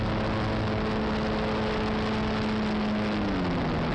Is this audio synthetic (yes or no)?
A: no